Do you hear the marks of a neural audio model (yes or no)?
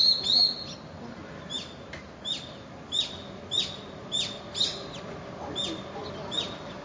no